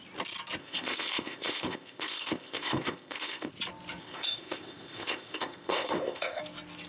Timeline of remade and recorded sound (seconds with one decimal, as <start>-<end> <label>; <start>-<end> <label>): 0.0-0.6 recorded; 0.6-3.5 remade; 3.5-4.0 recorded; 4.0-6.4 remade; 6.4-6.9 recorded